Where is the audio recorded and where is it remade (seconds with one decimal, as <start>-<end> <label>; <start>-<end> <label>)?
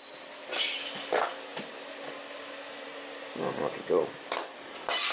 0.0-5.1 recorded